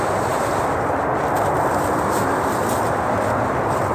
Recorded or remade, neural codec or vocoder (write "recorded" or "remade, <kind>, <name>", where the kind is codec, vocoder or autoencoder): recorded